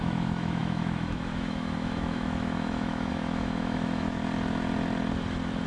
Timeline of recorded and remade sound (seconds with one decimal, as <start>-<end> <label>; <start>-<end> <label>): 0.0-4.2 remade; 4.2-5.7 recorded